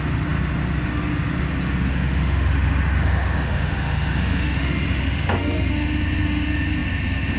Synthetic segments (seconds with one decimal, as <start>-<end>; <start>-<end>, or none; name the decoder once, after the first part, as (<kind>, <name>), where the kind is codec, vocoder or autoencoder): 1.9-5.7 (autoencoder, DAC-VAE)